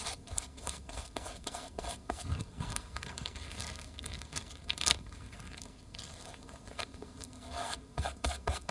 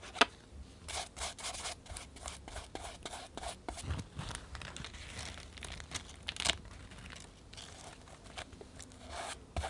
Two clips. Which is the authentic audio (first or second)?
second